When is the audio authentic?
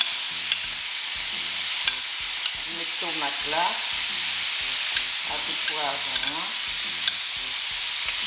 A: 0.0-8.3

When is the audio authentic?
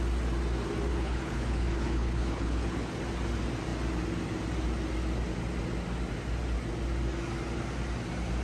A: 0.0-0.9; 2.9-8.4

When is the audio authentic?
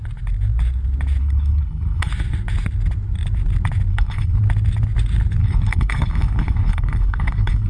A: 0.0-1.2; 2.1-3.9; 4.4-5.4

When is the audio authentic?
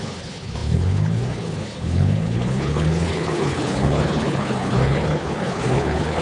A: none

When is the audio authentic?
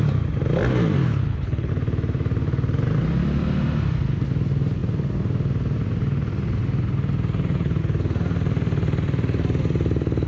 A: 0.0-1.0; 1.7-10.3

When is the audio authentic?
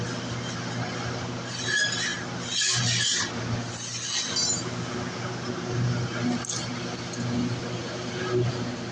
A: 0.0-8.9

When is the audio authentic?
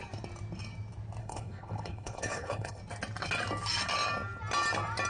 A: 0.0-1.2; 2.8-5.1